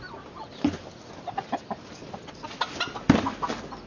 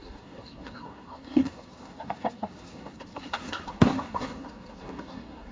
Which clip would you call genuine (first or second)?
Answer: first